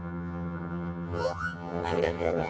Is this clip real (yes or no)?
no